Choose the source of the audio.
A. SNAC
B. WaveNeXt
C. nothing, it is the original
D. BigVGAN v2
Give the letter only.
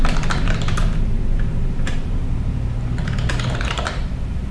D